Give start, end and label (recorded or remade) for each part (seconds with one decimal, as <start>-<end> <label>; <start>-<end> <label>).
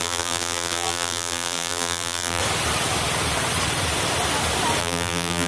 0.0-2.4 remade; 2.4-4.8 recorded; 4.8-5.5 remade